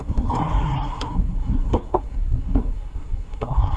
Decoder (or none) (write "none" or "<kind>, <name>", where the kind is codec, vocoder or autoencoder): codec, SNAC